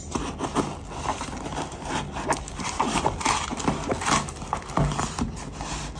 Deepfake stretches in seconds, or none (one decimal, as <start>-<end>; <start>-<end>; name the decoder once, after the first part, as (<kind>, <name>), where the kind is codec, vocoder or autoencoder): 0.0-3.5 (vocoder, BigVGAN v2); 4.6-6.0